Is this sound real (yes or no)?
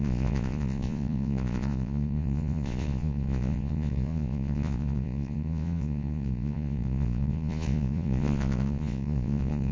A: no